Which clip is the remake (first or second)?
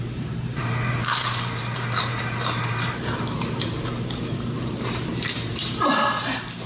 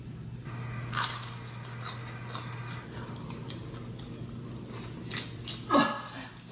first